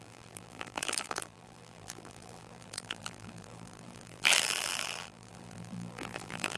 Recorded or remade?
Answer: remade